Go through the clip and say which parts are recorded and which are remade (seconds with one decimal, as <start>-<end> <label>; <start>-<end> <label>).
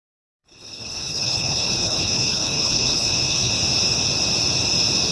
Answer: 0.0-0.4 recorded; 0.4-3.5 remade; 3.5-5.1 recorded